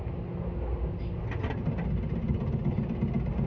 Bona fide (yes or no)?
yes